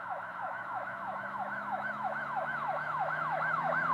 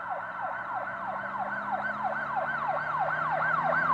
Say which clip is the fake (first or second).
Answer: first